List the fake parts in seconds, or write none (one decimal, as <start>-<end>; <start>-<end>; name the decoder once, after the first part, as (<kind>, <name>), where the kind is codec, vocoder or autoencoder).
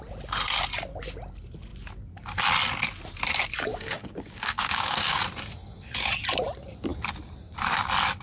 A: 3.7-5.2 (codec, DAC)